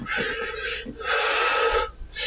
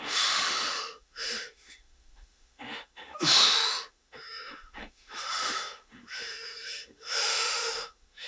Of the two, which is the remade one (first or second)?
second